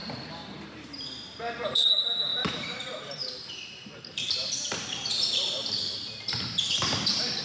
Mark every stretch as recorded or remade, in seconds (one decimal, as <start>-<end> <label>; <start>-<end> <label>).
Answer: 0.0-1.9 remade; 1.9-2.3 recorded; 2.3-6.7 remade; 6.7-7.4 recorded

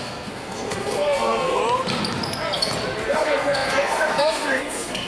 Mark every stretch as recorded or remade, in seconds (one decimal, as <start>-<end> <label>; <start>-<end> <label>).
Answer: 0.0-1.6 remade; 1.6-3.1 recorded; 3.1-5.1 remade

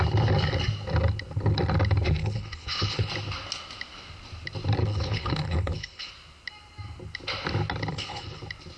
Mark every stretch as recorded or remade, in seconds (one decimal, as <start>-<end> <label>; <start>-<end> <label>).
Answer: 0.0-2.2 recorded; 2.2-3.1 remade; 3.1-4.8 recorded; 4.8-6.1 remade; 6.1-7.9 recorded; 7.9-8.4 remade; 8.4-8.8 recorded

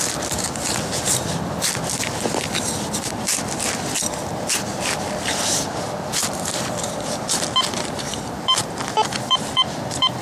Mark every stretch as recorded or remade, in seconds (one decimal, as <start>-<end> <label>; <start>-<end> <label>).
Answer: 0.0-10.2 remade

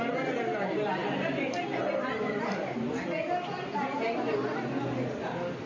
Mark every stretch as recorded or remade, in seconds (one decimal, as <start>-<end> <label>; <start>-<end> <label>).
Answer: 0.0-5.7 recorded

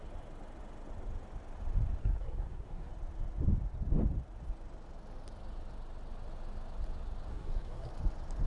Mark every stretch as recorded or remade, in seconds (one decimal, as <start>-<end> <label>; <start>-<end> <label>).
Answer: 0.0-2.0 recorded; 2.0-2.9 remade; 2.9-7.3 recorded; 7.3-7.9 remade; 7.9-8.5 recorded

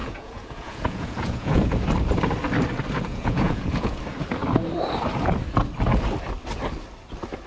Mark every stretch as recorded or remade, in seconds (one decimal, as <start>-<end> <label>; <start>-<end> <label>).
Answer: 0.0-1.7 remade; 1.7-3.1 recorded; 3.1-4.0 remade; 4.0-7.5 recorded

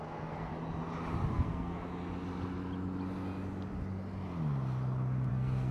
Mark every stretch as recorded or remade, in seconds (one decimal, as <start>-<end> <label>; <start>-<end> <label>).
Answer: 0.0-0.5 remade; 0.5-1.3 recorded; 1.3-1.9 remade; 1.9-5.3 recorded; 5.3-5.7 remade